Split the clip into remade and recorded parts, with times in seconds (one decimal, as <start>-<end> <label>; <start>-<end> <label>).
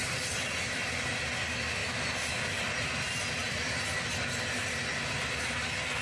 0.0-6.0 recorded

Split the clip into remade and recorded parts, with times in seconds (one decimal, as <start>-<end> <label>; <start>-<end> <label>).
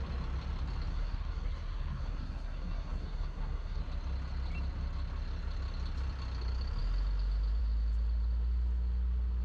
0.0-0.9 recorded; 0.9-3.8 remade; 3.8-9.4 recorded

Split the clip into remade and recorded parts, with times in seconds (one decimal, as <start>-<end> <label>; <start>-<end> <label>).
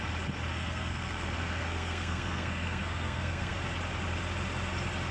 0.0-0.5 recorded; 0.5-3.6 remade; 3.6-5.1 recorded